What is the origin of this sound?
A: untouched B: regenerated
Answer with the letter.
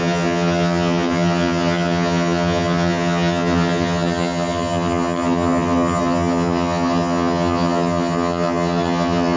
B